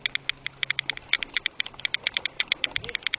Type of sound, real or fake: real